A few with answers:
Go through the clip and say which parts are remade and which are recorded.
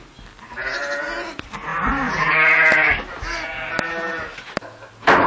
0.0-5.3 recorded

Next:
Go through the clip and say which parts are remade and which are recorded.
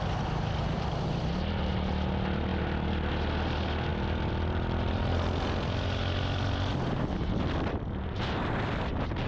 0.0-9.3 recorded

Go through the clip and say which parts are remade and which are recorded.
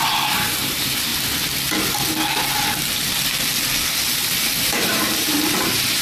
0.0-1.1 remade; 1.1-4.7 recorded; 4.7-6.0 remade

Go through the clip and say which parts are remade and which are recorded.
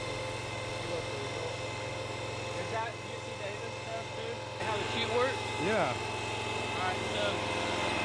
0.0-8.0 recorded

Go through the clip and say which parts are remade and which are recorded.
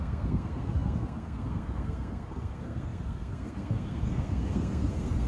0.0-5.3 remade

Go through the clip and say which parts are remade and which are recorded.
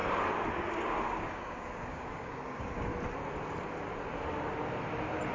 0.0-0.5 recorded; 0.5-2.9 remade; 2.9-5.3 recorded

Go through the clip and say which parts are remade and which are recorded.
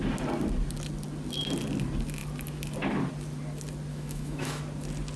0.0-3.9 recorded; 3.9-4.6 remade; 4.6-5.2 recorded